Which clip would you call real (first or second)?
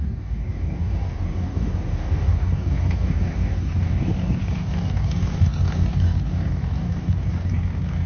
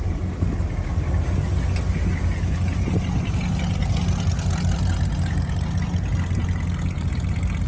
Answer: second